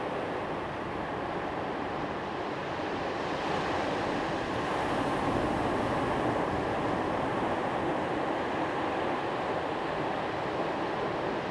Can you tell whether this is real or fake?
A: real